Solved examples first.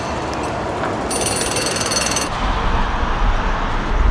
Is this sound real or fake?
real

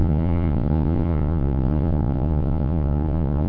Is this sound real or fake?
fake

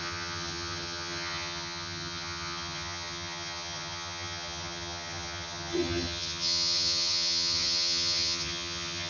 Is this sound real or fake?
fake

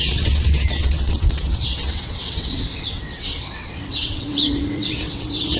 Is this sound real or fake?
fake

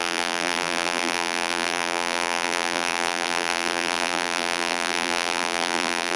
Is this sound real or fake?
fake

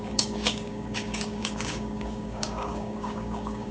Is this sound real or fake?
fake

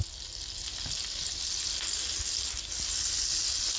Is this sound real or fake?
real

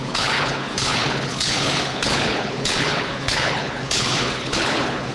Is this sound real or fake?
fake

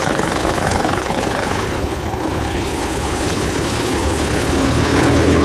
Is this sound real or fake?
fake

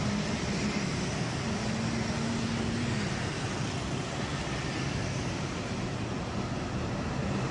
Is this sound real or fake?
real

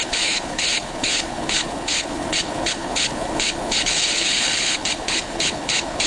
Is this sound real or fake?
fake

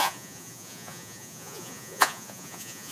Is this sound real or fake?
fake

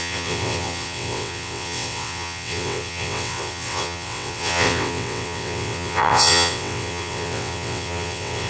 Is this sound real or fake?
fake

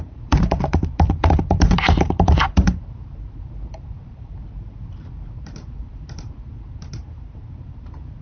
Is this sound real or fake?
fake